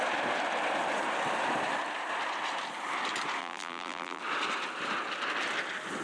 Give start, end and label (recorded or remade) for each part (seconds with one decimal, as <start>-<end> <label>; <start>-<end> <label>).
0.0-3.4 recorded; 3.4-4.2 remade; 4.2-6.0 recorded